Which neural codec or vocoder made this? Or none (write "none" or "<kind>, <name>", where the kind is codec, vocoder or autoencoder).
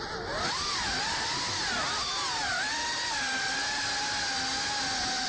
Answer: none